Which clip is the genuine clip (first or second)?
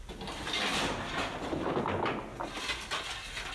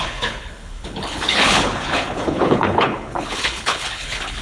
first